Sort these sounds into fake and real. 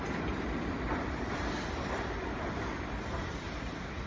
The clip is real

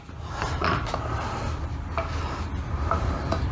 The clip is real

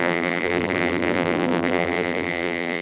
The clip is fake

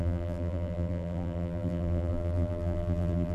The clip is fake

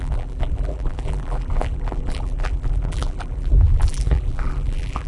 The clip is fake